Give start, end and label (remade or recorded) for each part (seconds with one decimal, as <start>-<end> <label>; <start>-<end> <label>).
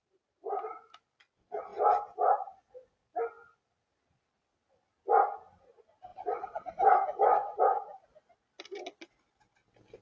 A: 0.0-0.8 remade; 0.8-6.1 recorded; 6.1-7.6 remade; 7.6-10.0 recorded